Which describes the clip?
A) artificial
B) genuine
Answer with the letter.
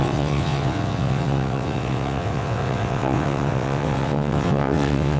A